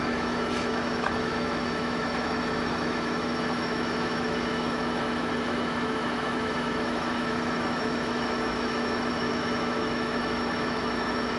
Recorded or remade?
remade